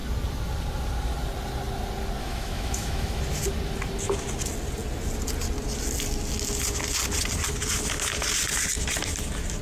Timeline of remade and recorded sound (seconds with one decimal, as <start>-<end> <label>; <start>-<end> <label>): 0.0-2.2 recorded; 2.2-3.2 remade; 3.2-9.6 recorded